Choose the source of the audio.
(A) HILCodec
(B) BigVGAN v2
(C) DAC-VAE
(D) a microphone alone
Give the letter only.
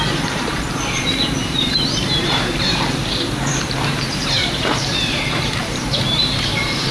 B